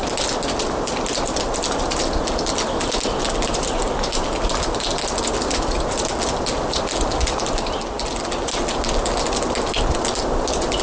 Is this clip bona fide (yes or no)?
yes